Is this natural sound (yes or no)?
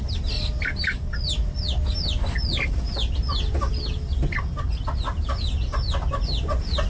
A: yes